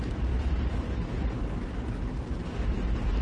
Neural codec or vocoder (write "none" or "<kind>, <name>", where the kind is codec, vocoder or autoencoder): none